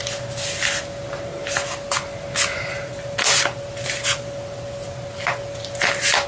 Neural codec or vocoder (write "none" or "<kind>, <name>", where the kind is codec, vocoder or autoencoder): none